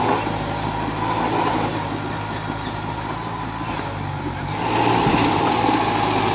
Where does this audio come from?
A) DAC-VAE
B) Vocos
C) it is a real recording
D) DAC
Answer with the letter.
C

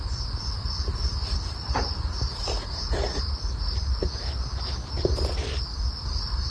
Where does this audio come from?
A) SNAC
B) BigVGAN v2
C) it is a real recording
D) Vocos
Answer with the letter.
C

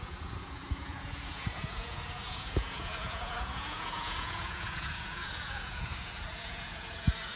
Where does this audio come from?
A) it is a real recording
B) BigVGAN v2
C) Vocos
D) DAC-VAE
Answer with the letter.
C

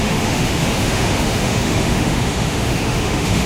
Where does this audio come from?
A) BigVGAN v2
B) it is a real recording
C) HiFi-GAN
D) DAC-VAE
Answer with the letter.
D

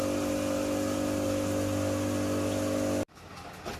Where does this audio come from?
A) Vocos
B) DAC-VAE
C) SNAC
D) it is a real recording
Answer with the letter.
D